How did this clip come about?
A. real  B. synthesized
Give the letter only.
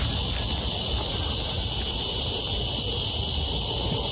A